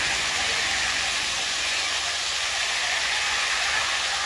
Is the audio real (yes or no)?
no